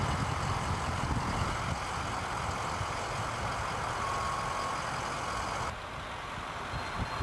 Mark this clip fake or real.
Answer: real